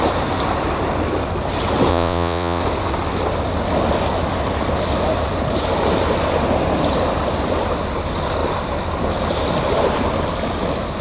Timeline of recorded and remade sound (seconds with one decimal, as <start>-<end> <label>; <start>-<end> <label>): 0.0-1.9 recorded; 1.9-2.6 remade; 2.6-11.0 recorded